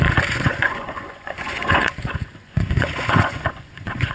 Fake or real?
fake